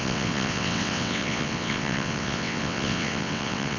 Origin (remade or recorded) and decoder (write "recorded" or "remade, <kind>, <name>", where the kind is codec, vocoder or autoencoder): remade, vocoder, WaveNeXt